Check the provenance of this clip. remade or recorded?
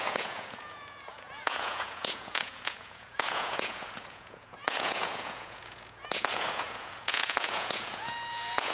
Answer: remade